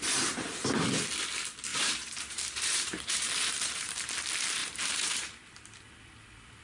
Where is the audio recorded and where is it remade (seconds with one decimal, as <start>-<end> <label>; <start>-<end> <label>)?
0.0-1.7 recorded; 1.7-4.1 remade; 4.1-4.6 recorded; 4.6-5.3 remade; 5.3-6.6 recorded